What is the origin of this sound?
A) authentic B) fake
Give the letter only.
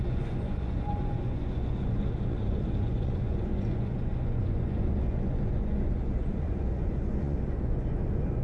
B